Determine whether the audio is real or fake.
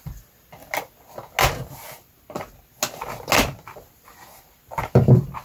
real